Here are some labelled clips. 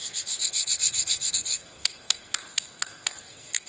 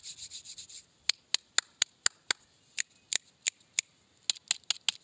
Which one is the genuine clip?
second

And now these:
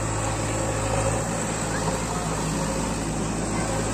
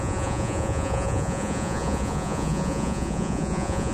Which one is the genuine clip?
first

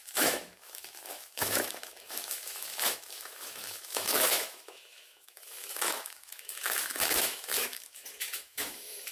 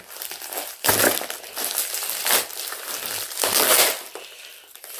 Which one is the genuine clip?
second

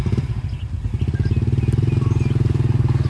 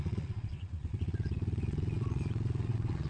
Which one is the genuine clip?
first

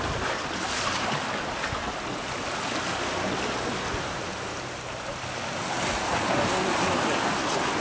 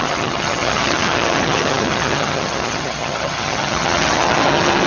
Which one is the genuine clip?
first